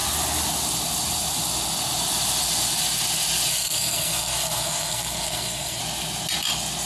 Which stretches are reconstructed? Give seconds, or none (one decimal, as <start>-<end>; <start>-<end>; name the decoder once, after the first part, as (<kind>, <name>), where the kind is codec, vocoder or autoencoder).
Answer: 3.5-5.8 (codec, SNAC)